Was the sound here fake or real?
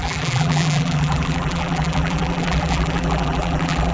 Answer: fake